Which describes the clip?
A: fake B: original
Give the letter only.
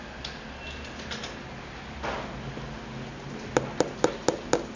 B